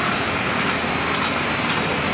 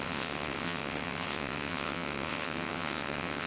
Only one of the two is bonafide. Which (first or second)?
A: first